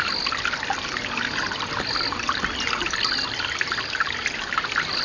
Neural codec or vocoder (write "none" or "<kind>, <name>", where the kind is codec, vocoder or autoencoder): none